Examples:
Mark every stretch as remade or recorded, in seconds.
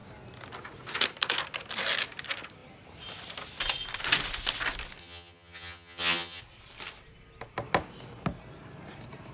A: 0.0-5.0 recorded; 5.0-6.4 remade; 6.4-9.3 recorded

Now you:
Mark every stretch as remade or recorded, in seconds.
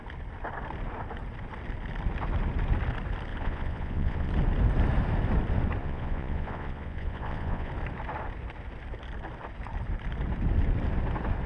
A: 0.0-3.3 recorded; 3.3-4.3 remade; 4.3-5.8 recorded; 5.8-7.7 remade; 7.7-11.5 recorded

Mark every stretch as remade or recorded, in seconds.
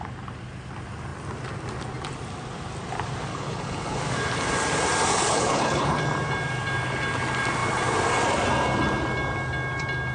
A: 0.0-3.3 recorded; 3.3-4.0 remade; 4.0-5.1 recorded; 5.1-6.0 remade; 6.0-10.1 recorded